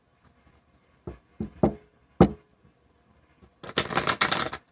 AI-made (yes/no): no